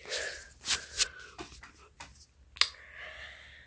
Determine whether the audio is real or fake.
real